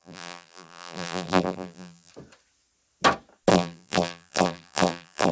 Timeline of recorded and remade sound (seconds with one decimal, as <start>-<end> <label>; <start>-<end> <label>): 0.0-2.1 remade; 2.1-3.5 recorded; 3.5-5.3 remade